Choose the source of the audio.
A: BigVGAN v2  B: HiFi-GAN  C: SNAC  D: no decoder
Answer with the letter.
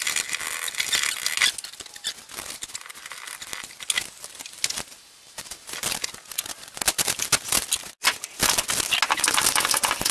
D